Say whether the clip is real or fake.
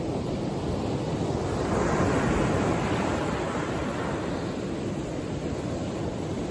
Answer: real